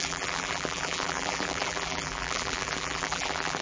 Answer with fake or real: fake